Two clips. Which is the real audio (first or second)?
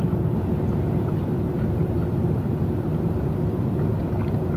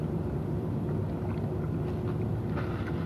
second